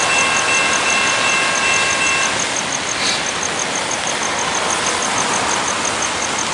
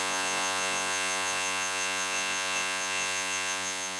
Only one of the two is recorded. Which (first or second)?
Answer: first